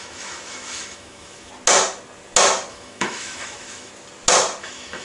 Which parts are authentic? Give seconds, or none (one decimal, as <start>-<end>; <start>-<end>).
1.5-2.7; 3.9-4.6